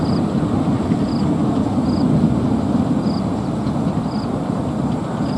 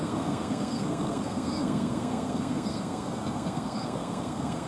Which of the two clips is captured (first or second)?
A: first